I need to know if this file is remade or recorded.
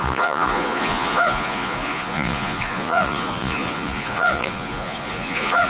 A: remade